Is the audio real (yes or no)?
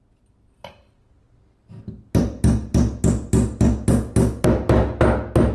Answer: yes